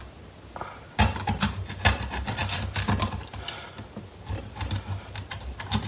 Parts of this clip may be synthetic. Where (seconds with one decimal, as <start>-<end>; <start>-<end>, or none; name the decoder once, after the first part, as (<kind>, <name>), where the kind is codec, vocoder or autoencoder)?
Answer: none

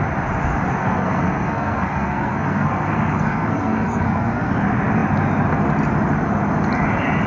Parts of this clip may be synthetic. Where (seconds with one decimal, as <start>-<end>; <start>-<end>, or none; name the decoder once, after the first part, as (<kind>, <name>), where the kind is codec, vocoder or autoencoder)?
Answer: 0.8-4.5 (codec, SNAC)

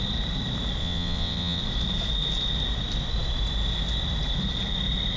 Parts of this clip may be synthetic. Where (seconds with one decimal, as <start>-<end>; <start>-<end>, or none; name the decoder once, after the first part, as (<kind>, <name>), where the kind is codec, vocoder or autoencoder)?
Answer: 0.8-1.6 (vocoder, WaveNeXt)

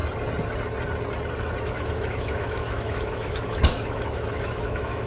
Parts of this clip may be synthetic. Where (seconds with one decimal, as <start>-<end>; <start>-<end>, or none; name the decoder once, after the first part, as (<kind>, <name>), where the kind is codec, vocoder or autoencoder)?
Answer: 1.6-5.1 (autoencoder, DAC-VAE)

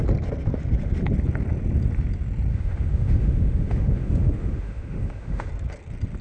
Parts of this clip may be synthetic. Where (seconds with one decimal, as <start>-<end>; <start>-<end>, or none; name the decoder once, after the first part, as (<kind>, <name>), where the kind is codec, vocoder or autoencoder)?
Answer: 2.5-5.5 (autoencoder, DAC-VAE)

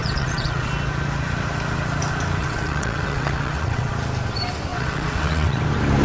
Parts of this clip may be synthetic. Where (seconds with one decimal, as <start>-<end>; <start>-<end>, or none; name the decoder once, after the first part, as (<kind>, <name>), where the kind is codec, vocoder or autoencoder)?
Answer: 0.0-0.7 (vocoder, WaveNeXt); 2.4-3.9; 4.7-5.6

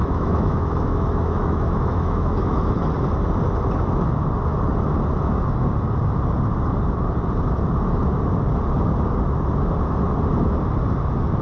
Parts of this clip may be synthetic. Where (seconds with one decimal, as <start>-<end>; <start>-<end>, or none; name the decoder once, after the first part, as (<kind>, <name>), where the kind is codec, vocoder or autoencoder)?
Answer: 0.0-2.7 (autoencoder, DAC-VAE)

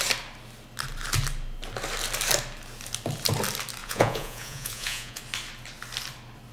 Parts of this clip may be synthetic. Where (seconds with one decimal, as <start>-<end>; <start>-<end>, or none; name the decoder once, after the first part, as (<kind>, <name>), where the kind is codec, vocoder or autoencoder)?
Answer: 3.8-5.2 (vocoder, Vocos)